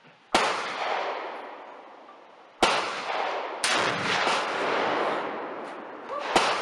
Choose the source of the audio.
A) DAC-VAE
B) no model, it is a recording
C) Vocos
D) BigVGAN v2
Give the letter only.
B